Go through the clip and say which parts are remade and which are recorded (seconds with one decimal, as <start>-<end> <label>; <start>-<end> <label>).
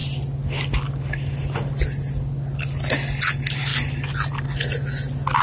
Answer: 0.0-5.4 recorded